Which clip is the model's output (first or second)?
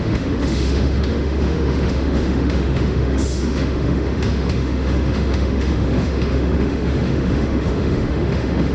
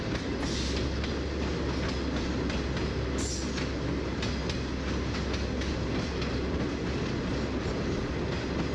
first